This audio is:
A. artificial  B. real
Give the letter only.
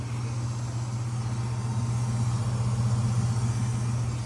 B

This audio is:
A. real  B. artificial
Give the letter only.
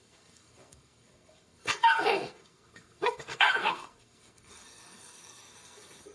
B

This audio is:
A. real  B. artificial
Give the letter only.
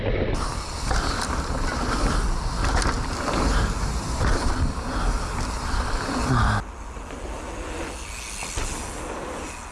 A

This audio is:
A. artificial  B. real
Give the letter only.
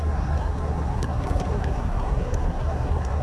A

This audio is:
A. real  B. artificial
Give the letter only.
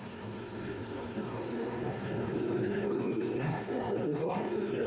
B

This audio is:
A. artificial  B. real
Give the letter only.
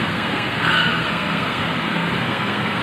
A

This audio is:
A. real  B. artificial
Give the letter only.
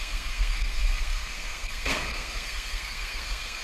B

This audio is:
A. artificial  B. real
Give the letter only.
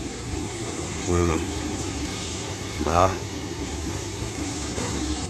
A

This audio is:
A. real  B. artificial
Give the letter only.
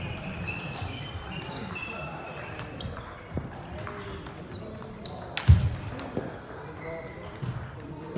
A